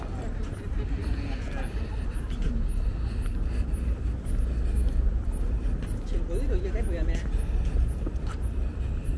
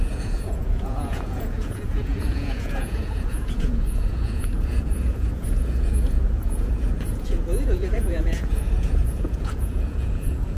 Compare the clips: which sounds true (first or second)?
first